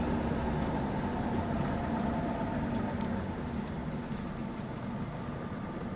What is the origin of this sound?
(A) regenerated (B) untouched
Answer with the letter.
B